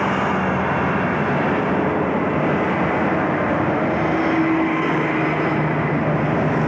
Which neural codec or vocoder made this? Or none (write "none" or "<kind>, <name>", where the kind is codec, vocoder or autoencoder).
none